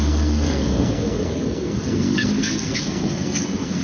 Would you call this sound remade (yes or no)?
yes